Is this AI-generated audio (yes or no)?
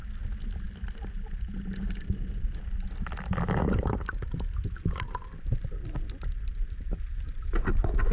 no